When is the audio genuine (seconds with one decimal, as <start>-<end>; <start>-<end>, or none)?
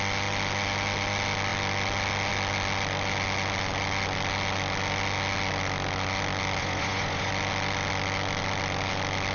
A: 0.0-6.6; 7.3-9.3